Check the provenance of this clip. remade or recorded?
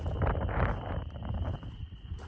remade